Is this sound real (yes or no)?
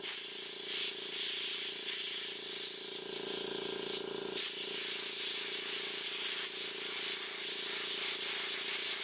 yes